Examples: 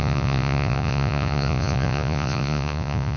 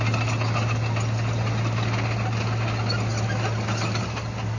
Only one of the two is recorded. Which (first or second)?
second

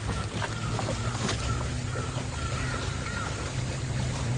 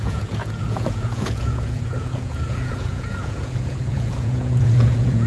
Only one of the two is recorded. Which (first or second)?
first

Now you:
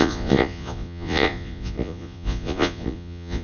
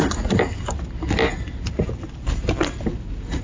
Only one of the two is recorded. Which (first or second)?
second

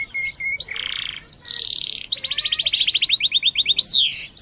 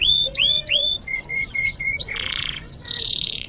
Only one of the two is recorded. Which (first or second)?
first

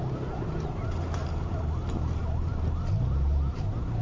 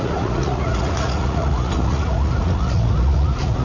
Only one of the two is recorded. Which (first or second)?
first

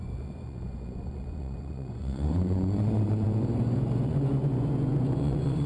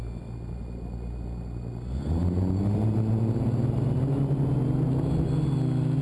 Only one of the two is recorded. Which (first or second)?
second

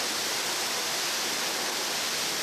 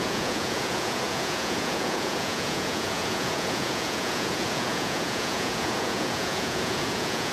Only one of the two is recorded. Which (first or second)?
first